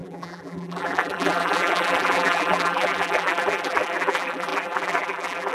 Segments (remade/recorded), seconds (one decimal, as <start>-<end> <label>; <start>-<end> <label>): 0.0-5.5 remade